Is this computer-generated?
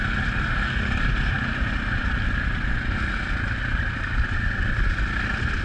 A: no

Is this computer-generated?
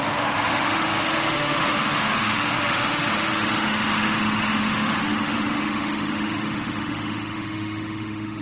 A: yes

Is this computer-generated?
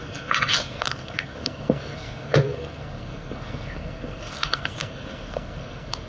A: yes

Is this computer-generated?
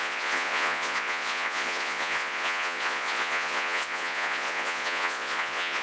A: yes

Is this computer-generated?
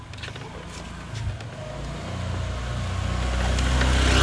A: no